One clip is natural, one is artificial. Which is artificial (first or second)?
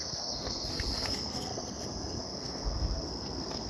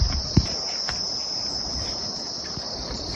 first